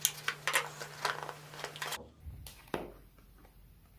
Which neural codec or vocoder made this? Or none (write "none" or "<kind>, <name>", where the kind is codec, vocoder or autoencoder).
none